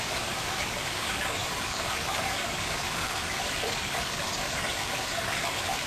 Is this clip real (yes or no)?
no